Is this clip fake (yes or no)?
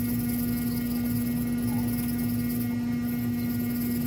no